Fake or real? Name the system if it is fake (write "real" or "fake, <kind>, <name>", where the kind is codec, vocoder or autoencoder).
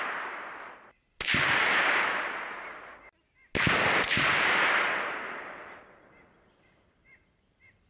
real